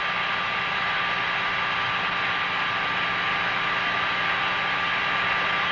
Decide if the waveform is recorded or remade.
recorded